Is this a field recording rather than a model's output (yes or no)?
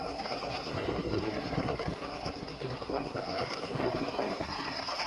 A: no